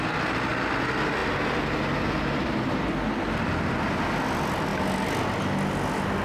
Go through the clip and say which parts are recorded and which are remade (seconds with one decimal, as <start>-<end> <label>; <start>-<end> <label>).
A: 0.0-6.2 recorded

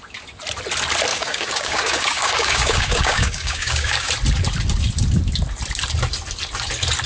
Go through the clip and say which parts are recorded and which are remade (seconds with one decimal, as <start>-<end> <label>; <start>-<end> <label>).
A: 0.0-1.1 recorded; 1.1-4.1 remade; 4.1-7.1 recorded

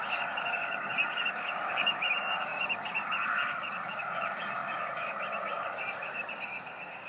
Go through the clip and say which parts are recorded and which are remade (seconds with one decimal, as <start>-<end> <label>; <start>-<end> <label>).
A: 0.0-7.1 remade

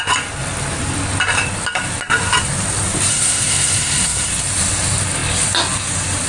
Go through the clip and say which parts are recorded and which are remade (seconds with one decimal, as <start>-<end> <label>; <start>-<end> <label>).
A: 0.0-3.1 recorded; 3.1-4.3 remade; 4.3-6.3 recorded

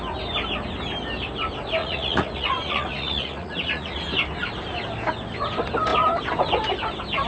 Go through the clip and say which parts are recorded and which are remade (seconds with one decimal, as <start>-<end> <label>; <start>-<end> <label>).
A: 0.0-1.8 recorded; 1.8-4.0 remade; 4.0-7.3 recorded